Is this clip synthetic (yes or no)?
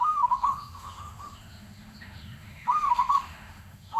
yes